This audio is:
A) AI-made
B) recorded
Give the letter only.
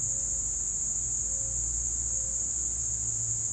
B